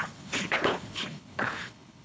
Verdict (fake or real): fake